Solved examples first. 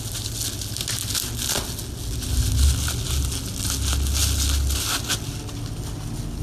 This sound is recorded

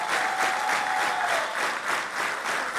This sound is remade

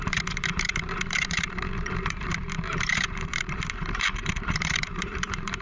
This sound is remade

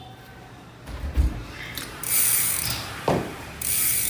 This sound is remade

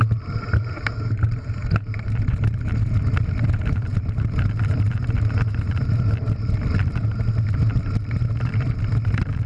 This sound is remade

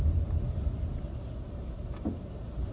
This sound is recorded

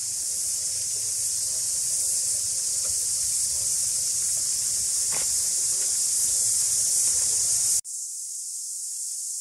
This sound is remade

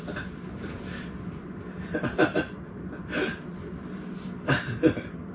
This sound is recorded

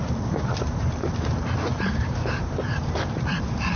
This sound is remade